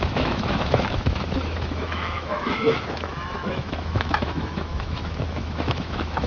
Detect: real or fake fake